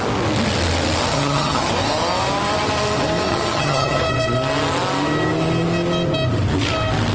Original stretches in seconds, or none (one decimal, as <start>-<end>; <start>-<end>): 0.0-1.1; 1.7-3.3; 4.0-7.1